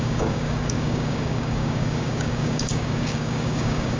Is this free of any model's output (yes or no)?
no